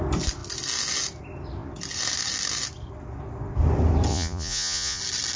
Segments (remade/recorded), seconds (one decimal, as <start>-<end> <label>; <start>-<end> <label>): 0.0-4.1 recorded; 4.1-5.0 remade; 5.0-5.4 recorded